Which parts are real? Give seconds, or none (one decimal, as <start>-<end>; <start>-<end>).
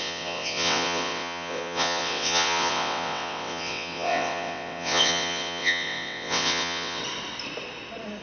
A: 7.0-8.2